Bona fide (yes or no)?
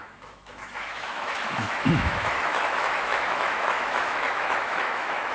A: no